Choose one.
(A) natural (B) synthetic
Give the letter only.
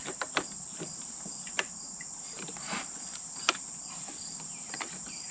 B